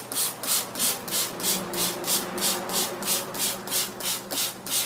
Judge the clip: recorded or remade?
recorded